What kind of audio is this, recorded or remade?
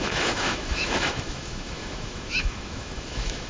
remade